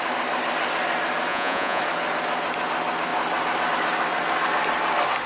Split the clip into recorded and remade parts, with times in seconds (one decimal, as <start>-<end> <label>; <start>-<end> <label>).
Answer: 0.0-1.3 recorded; 1.3-1.8 remade; 1.8-5.3 recorded